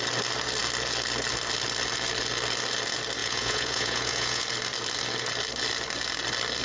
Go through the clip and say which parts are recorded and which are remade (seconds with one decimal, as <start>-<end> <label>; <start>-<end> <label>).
0.0-3.2 recorded; 3.2-4.4 remade; 4.4-6.6 recorded